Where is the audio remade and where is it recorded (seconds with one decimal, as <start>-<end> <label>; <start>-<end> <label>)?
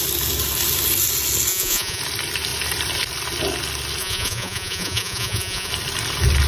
0.0-1.5 recorded; 1.5-2.0 remade; 2.0-4.0 recorded; 4.0-5.7 remade; 5.7-6.5 recorded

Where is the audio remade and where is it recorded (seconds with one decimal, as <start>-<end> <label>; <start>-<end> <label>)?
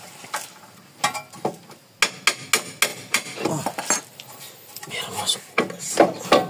0.0-2.9 recorded; 2.9-4.9 remade; 4.9-6.5 recorded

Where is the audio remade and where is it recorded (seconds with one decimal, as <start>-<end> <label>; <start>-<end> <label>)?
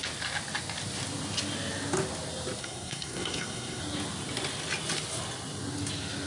0.0-2.6 recorded; 2.6-3.8 remade; 3.8-6.3 recorded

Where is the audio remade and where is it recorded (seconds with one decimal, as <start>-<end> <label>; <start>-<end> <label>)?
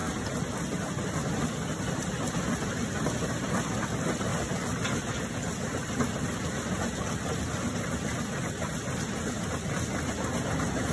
0.0-10.9 recorded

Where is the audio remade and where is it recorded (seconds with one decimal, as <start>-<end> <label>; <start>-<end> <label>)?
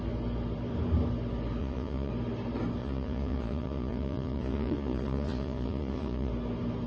0.0-1.6 recorded; 1.6-2.1 remade; 2.1-2.8 recorded; 2.8-6.3 remade; 6.3-6.9 recorded